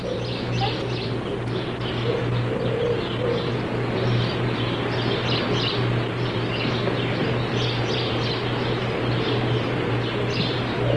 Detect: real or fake real